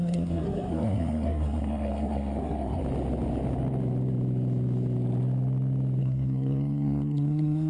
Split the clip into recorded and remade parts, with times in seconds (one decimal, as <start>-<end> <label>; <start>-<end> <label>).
0.0-2.8 remade; 2.8-6.0 recorded; 6.0-7.7 remade